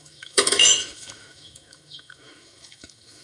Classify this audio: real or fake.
fake